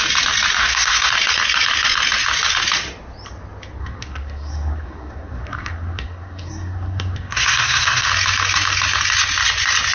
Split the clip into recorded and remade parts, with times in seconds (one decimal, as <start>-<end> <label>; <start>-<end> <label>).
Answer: 0.0-0.6 recorded; 0.6-1.1 remade; 1.1-3.8 recorded; 3.8-8.1 remade; 8.1-9.9 recorded

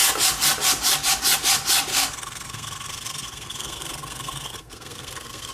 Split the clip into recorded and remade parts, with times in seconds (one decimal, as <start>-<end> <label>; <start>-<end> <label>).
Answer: 0.0-1.9 recorded; 1.9-5.5 remade

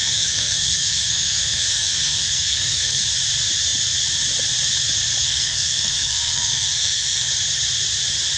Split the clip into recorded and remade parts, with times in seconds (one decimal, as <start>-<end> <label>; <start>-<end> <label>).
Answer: 0.0-3.1 remade; 3.1-5.2 recorded; 5.2-7.3 remade; 7.3-8.4 recorded

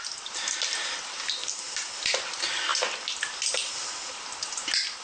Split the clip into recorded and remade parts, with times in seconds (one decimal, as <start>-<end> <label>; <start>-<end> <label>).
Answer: 0.0-5.0 recorded

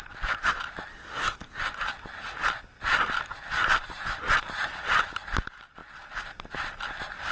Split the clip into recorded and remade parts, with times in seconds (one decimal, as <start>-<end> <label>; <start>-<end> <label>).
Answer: 0.0-0.9 recorded; 0.9-1.6 remade; 1.6-7.3 recorded

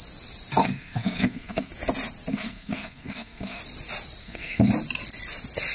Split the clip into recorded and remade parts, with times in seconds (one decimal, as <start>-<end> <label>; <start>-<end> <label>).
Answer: 0.0-0.6 recorded; 0.6-1.7 remade; 1.7-2.3 recorded; 2.3-3.6 remade; 3.6-4.2 recorded; 4.2-4.7 remade; 4.7-5.7 recorded

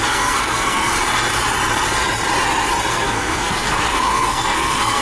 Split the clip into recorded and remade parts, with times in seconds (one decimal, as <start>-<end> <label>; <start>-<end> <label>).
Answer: 0.0-0.9 remade; 0.9-2.9 recorded; 2.9-5.0 remade

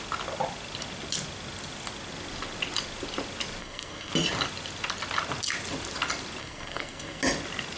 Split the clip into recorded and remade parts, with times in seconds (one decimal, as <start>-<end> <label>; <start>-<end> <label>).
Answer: 0.0-3.6 recorded; 3.6-4.1 remade; 4.1-6.4 recorded; 6.4-7.2 remade; 7.2-7.8 recorded